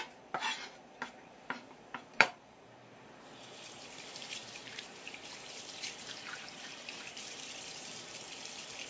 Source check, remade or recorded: remade